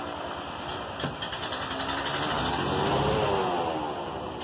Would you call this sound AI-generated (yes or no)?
no